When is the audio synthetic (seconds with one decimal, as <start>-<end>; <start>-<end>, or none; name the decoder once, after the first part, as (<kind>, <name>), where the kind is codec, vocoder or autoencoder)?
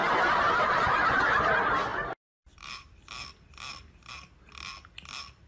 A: 0.0-1.2 (vocoder, BigVGAN v2); 1.9-2.9